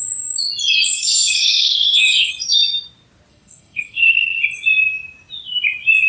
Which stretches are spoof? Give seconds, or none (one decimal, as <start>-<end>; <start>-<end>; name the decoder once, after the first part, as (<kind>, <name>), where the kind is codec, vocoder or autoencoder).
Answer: 0.8-2.3 (codec, SNAC); 3.3-4.4